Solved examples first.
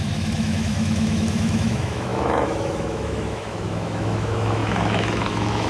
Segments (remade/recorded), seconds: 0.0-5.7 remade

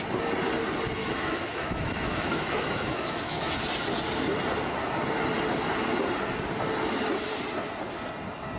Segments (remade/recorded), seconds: 0.0-1.0 recorded; 1.0-3.5 remade; 3.5-8.6 recorded

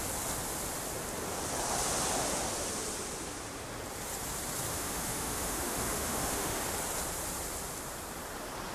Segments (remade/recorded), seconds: 0.0-4.7 recorded; 4.7-6.6 remade; 6.6-8.7 recorded

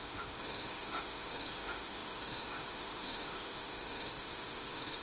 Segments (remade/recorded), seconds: 0.0-5.0 remade

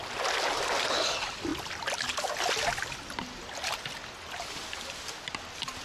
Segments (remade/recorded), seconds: 0.0-5.8 recorded

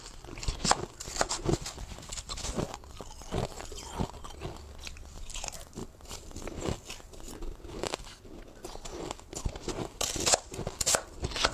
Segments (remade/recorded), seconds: 0.0-11.5 recorded

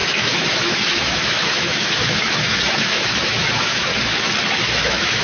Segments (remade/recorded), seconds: 0.0-3.9 remade; 3.9-4.6 recorded; 4.6-5.2 remade